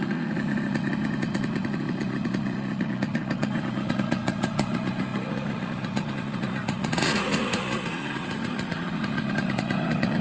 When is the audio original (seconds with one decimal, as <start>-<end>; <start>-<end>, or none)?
none